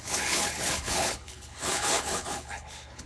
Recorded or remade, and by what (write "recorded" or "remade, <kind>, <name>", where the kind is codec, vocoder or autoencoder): remade, codec, HILCodec